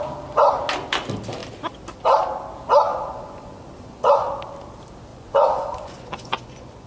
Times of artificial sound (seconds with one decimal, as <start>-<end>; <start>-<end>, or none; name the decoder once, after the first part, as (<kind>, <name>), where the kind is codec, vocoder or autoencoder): 2.9-4.4 (vocoder, Vocos); 5.1-6.9